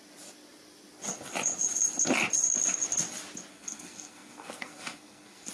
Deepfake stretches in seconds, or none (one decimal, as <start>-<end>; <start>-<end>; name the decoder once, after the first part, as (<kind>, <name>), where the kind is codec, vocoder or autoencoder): 3.5-5.5 (codec, SNAC)

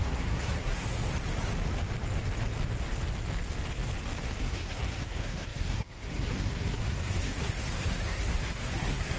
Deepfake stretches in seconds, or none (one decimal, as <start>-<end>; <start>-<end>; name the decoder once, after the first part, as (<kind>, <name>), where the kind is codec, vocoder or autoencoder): 0.0-1.0 (codec, SNAC); 4.4-9.2